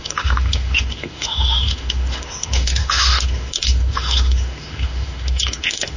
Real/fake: fake